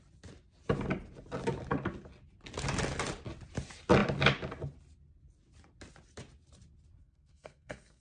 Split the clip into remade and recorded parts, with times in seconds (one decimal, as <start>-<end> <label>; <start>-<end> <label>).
0.0-7.0 recorded; 7.0-8.0 remade